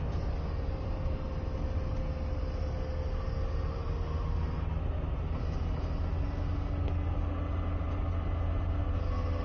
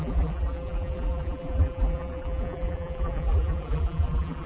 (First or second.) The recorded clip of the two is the first